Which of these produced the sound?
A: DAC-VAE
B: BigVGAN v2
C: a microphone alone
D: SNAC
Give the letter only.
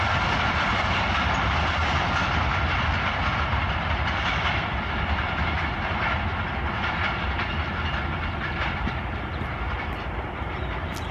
C